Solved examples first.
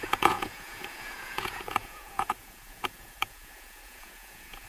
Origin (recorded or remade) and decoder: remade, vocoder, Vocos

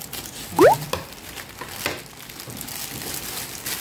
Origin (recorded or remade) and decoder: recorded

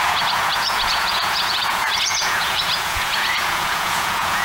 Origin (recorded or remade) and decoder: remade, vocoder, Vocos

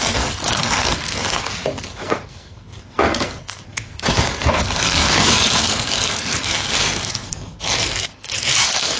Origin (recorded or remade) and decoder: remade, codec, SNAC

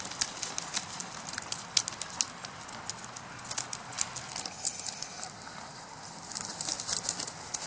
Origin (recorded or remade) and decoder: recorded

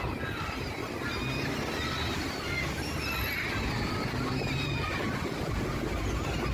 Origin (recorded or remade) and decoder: recorded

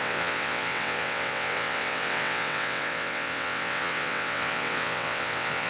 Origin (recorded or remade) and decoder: remade, vocoder, WaveNeXt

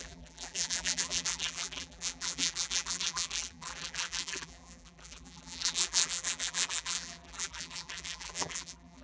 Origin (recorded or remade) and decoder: remade, vocoder, BigVGAN v2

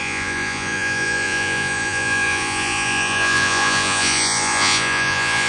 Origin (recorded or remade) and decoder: remade, vocoder, Vocos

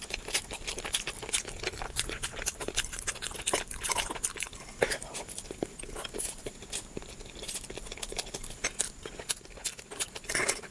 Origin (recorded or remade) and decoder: recorded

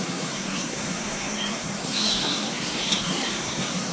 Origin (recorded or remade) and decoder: remade, codec, SNAC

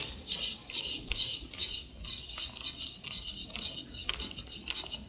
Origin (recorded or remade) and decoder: recorded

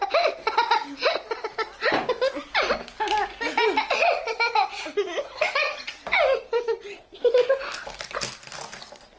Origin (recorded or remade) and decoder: recorded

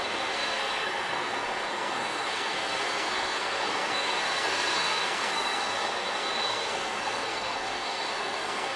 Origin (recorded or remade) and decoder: remade, codec, SNAC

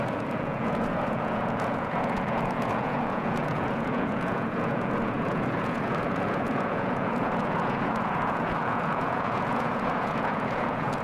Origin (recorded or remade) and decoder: remade, vocoder, Vocos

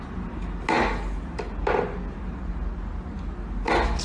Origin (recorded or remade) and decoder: recorded